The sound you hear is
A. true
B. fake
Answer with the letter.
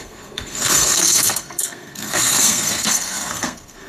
B